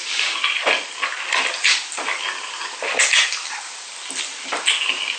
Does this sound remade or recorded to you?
recorded